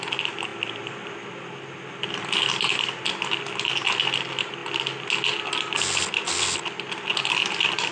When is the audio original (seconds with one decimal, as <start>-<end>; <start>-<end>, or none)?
0.0-7.9